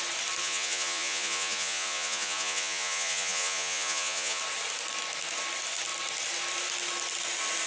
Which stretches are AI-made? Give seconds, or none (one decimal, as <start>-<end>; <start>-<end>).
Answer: 0.4-4.4